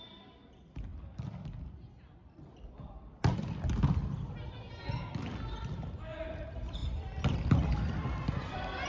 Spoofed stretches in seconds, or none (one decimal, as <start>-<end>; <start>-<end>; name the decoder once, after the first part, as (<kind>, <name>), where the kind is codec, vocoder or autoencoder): 0.0-0.9 (vocoder, BigVGAN v2); 5.5-6.8; 7.5-8.9